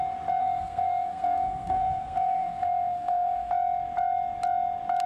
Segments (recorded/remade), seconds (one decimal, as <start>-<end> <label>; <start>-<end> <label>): 0.0-0.4 recorded; 0.4-3.5 remade; 3.5-5.1 recorded